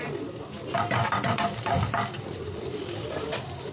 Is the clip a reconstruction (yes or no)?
no